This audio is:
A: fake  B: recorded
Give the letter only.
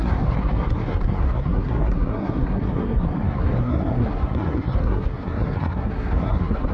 A